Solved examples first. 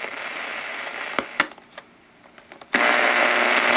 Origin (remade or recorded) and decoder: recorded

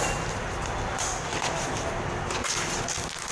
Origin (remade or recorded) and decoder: recorded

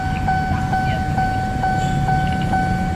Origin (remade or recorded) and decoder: recorded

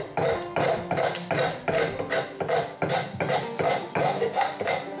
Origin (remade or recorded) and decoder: recorded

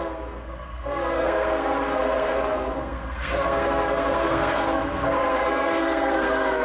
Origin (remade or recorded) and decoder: remade, codec, SNAC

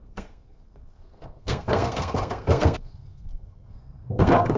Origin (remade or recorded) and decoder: remade, codec, SNAC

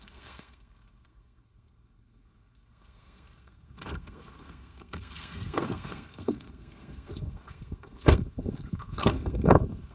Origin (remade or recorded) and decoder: remade, codec, SNAC